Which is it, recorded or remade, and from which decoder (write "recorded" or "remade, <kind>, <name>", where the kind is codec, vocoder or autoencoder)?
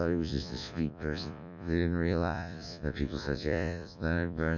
remade, vocoder, Vocos